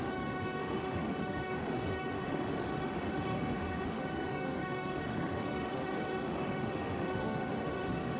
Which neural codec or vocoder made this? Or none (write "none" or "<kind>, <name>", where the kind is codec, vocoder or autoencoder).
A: autoencoder, DAC-VAE